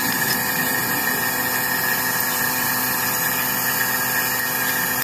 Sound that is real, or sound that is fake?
real